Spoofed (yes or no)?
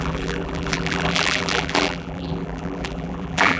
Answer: yes